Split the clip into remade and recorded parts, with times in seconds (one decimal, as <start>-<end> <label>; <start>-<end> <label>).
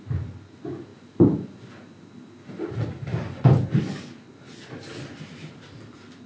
0.0-6.3 recorded